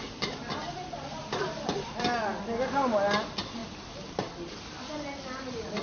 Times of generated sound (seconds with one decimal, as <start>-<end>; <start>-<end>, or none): 1.2-1.9